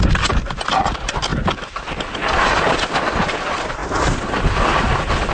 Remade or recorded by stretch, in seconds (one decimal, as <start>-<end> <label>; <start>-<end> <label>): 0.0-5.3 recorded